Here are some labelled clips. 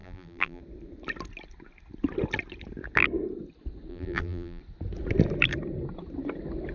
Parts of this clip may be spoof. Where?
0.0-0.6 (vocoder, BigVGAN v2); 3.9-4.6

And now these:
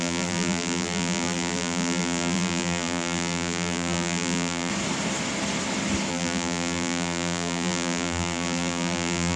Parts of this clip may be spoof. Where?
0.0-4.7 (vocoder, BigVGAN v2); 6.1-9.4

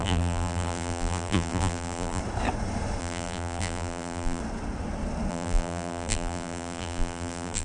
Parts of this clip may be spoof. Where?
0.0-2.2 (vocoder, BigVGAN v2); 3.0-4.4; 5.3-7.6

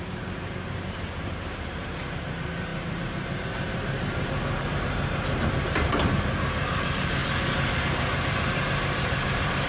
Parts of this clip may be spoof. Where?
0.0-7.2 (vocoder, BigVGAN v2); 7.8-9.7

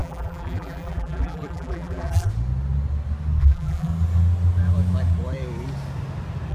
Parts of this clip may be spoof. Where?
0.0-2.3 (vocoder, BigVGAN v2); 3.4-3.9